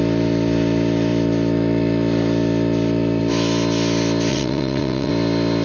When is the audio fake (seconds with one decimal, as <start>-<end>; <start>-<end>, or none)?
4.3-5.1